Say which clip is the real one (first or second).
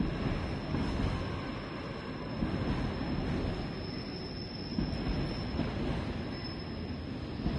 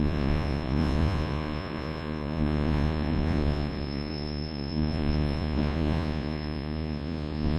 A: first